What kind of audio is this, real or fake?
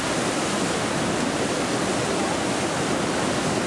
real